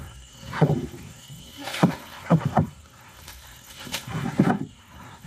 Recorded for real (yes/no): no